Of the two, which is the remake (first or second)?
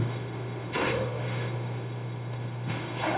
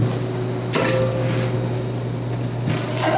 first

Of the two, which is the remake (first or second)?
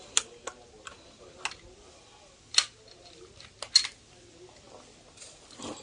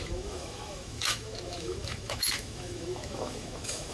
second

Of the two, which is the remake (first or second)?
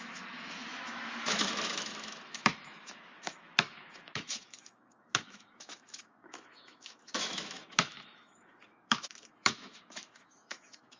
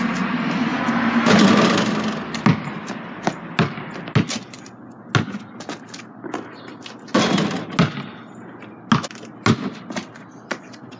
first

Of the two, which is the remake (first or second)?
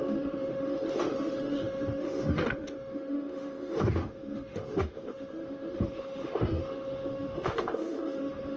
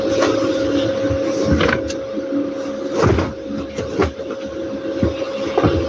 first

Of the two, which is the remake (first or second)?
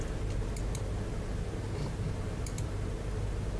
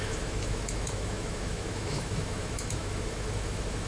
second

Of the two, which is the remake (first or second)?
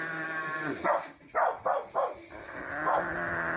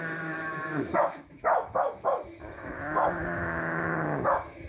second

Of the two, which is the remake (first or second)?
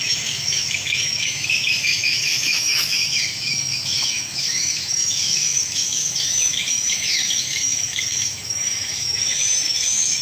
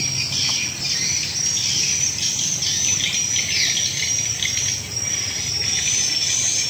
first